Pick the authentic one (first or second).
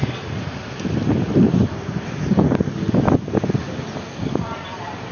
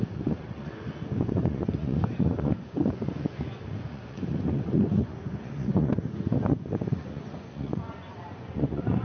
first